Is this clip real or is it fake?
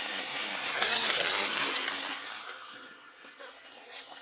fake